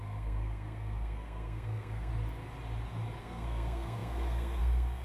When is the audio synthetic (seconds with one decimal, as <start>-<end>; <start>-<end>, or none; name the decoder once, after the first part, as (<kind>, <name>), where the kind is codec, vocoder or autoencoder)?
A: 0.0-2.1 (codec, SNAC); 3.2-5.0